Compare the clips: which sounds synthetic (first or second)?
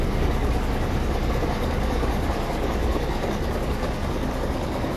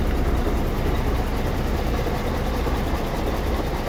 first